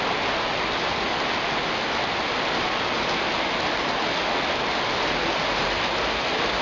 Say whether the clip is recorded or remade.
recorded